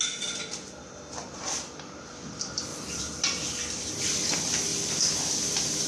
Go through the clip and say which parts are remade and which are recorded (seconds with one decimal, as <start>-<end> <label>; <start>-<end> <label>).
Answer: 0.0-5.9 recorded